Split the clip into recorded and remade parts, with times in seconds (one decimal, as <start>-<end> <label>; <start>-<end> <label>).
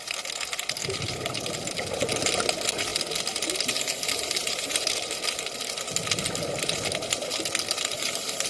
0.0-4.4 recorded; 4.4-5.3 remade; 5.3-8.5 recorded